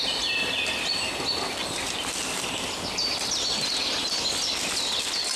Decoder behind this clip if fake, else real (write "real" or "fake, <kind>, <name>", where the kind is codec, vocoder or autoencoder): real